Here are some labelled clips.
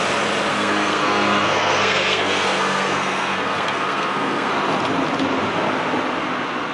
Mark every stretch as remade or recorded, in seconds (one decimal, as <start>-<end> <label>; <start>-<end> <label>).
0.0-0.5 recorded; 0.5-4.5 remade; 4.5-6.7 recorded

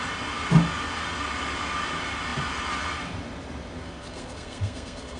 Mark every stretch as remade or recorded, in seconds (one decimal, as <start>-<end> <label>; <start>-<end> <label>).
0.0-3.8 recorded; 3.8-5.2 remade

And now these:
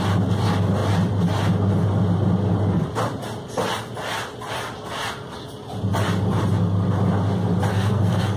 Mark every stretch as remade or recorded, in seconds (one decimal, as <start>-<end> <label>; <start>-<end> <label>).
0.0-7.7 recorded; 7.7-8.4 remade

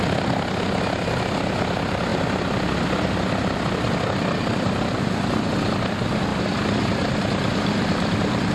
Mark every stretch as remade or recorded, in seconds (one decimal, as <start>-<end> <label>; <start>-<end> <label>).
0.0-8.5 recorded

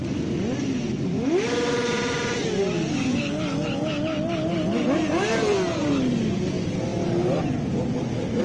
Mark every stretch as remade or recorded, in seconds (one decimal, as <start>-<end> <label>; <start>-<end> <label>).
0.0-8.4 recorded